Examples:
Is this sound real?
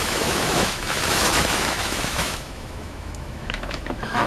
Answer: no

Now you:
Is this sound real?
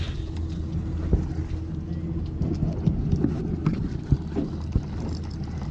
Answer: yes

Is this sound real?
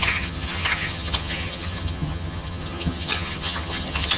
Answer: no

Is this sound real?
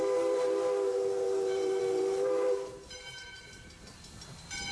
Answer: no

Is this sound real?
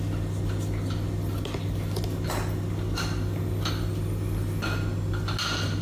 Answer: yes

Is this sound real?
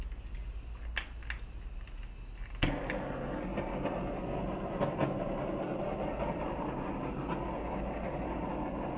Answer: yes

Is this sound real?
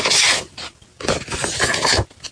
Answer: yes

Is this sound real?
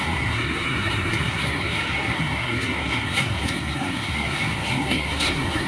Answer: no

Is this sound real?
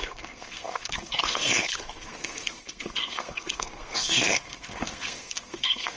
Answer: no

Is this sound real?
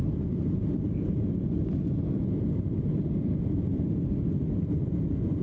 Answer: yes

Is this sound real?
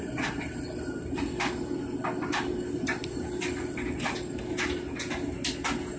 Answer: yes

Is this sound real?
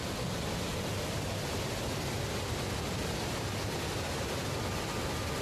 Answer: yes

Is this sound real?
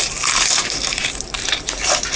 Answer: no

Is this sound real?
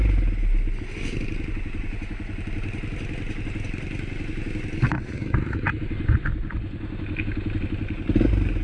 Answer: yes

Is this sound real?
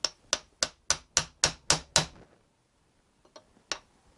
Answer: yes